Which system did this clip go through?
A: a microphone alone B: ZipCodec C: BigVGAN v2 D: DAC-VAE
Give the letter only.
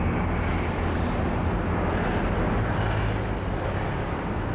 A